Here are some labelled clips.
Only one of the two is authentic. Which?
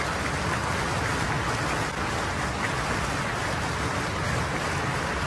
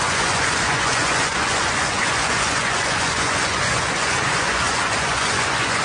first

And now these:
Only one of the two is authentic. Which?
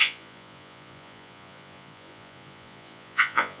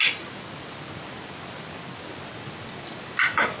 second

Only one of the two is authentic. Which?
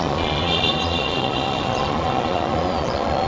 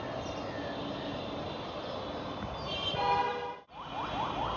second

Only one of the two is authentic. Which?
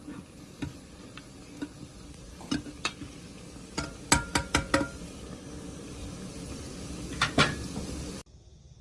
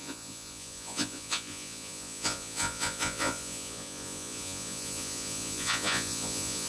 first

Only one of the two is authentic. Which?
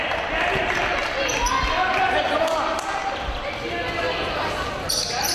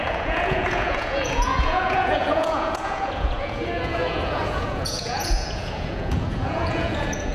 first